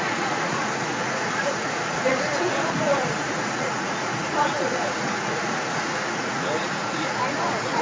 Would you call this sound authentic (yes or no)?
no